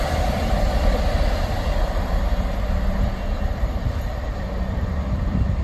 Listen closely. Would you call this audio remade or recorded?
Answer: remade